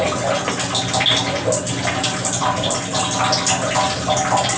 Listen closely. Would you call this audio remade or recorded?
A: recorded